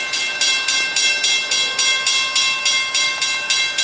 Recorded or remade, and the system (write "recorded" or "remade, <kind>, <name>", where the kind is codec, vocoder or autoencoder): recorded